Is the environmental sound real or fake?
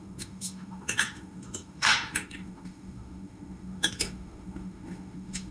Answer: fake